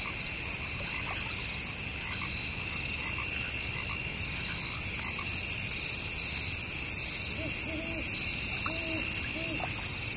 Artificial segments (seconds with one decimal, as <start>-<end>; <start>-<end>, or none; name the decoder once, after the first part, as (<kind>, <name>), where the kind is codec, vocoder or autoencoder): none